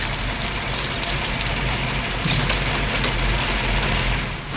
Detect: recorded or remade recorded